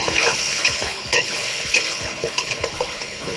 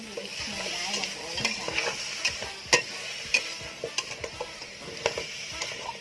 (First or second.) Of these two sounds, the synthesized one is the first